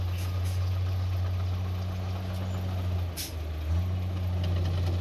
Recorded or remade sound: recorded